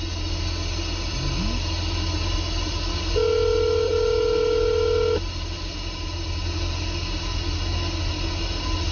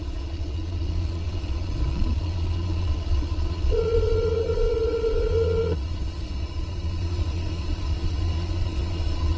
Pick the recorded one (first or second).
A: first